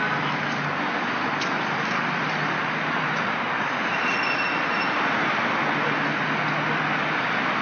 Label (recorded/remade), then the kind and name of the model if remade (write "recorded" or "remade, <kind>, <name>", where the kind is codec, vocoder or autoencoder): recorded